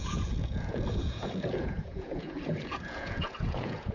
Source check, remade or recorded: remade